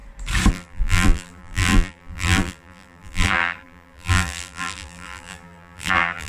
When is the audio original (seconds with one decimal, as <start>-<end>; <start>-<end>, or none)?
0.0-0.5

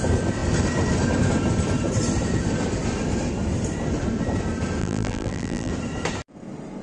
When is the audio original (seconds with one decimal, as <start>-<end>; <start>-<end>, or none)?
0.0-4.8; 5.7-6.8